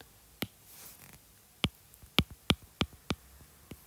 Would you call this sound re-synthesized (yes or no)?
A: no